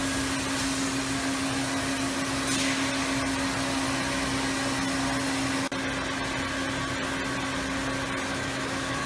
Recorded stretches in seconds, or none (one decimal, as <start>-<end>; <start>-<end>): 0.0-8.3